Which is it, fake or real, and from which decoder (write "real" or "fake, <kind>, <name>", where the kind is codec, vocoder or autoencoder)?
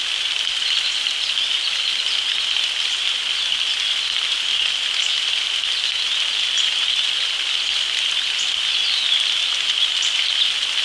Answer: real